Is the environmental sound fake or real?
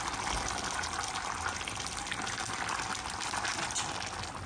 real